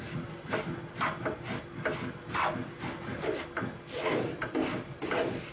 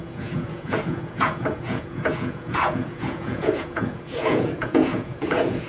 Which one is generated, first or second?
second